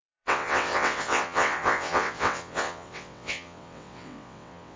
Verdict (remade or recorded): remade